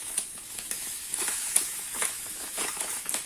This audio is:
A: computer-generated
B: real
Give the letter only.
A